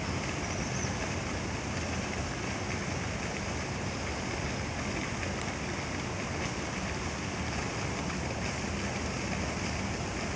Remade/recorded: recorded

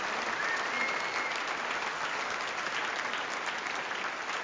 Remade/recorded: recorded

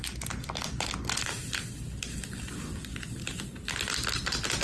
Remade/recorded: recorded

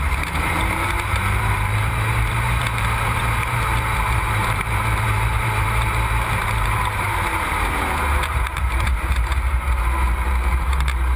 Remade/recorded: remade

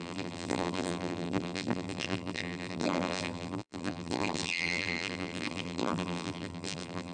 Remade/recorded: remade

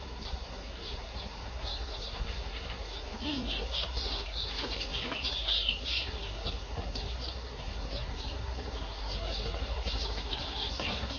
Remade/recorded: remade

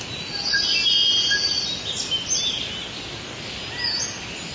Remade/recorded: recorded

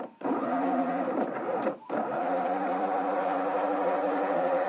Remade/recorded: remade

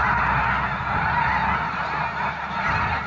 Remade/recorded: recorded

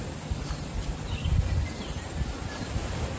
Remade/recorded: recorded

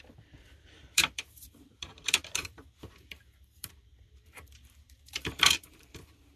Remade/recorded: remade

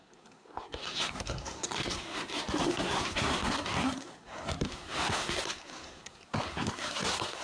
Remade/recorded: remade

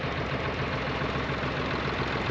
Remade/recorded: recorded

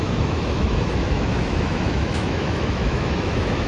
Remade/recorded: remade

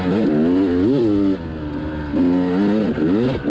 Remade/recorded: recorded